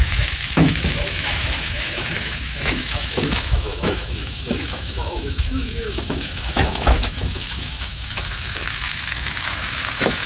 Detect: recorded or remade remade